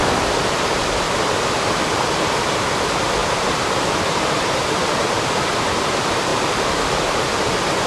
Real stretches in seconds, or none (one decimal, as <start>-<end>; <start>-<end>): 0.0-3.2; 5.2-6.3; 6.8-7.9